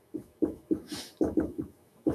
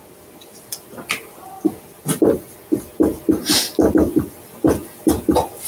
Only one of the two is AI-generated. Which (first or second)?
first